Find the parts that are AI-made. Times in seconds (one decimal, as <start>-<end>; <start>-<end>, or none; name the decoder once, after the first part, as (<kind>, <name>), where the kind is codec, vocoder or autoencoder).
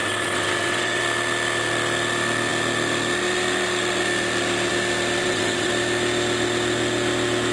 0.0-1.0 (vocoder, WaveNeXt); 5.2-5.7